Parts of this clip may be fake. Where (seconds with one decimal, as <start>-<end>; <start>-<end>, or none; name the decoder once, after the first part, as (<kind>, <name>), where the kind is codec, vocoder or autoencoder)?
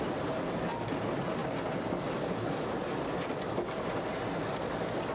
none